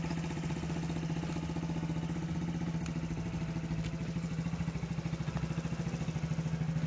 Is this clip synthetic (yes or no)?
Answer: no